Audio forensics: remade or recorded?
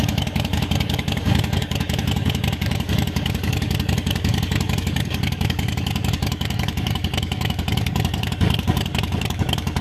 remade